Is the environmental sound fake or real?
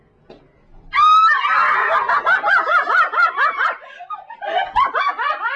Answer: real